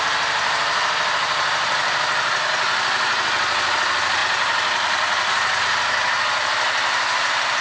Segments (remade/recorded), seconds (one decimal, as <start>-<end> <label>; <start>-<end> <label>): 0.0-7.6 recorded